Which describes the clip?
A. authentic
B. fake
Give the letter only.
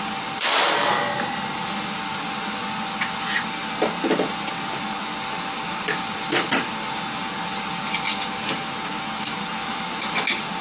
A